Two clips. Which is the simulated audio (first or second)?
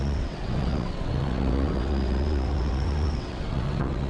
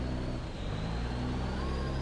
first